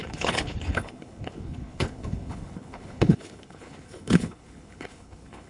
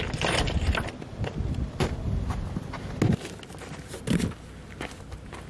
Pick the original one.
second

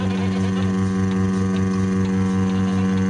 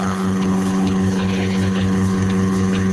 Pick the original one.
first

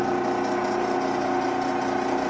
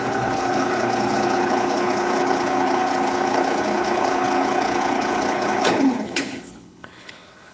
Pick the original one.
first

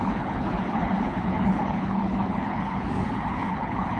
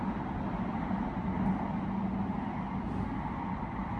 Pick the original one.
second